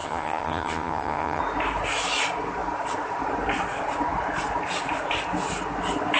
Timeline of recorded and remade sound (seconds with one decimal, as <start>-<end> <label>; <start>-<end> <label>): 0.0-1.4 remade; 1.4-6.2 recorded